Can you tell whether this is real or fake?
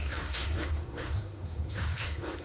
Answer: fake